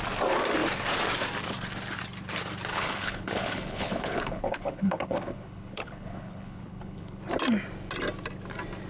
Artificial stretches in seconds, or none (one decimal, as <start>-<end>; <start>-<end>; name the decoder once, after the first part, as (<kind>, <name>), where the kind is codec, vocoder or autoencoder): 2.7-7.2 (codec, HILCodec)